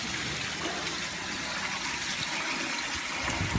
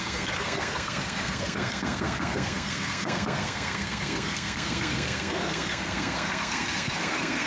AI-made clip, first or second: second